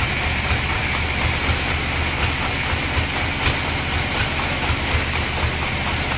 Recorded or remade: recorded